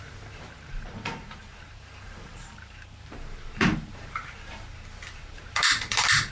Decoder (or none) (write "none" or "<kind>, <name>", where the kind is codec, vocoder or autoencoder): vocoder, BigVGAN v2